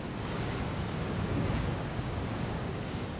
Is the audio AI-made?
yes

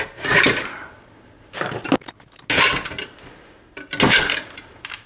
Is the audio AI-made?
no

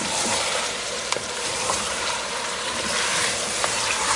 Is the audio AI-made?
yes